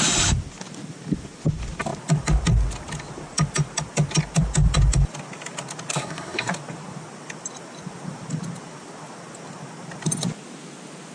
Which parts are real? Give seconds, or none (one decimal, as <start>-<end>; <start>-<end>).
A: 0.0-5.9; 6.5-11.1